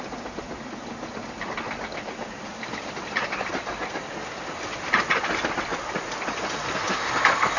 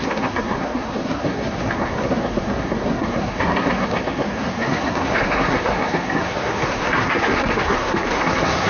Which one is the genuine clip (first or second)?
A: first